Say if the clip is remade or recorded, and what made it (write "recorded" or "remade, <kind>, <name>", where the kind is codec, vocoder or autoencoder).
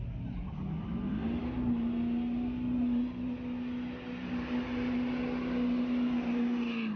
recorded